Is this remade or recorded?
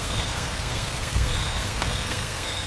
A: remade